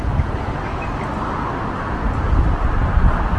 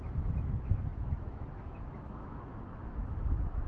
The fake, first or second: second